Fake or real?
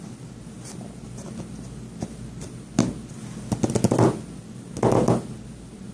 real